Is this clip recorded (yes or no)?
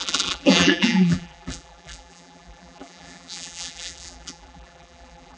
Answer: no